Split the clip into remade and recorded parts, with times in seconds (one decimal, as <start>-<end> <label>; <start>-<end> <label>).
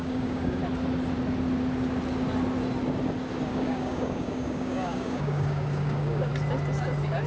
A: 0.0-0.6 remade; 0.6-3.5 recorded; 3.5-6.3 remade; 6.3-7.3 recorded